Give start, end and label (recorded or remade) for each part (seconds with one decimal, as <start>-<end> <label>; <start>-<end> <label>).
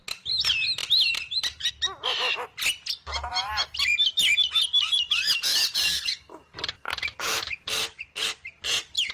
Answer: 0.0-0.8 recorded; 0.8-1.7 remade; 1.7-5.5 recorded; 5.5-9.1 remade